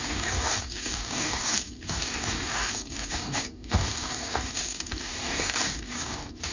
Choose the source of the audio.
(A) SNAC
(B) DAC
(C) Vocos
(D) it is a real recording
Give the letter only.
B